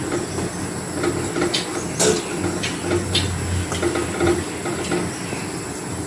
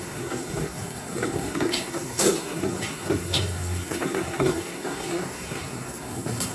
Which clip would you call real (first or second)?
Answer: first